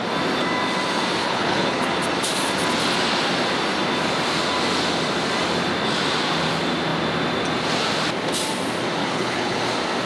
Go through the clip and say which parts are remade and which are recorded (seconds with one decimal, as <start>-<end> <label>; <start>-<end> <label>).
0.0-1.2 recorded; 1.2-1.9 remade; 1.9-9.0 recorded; 9.0-9.6 remade; 9.6-10.1 recorded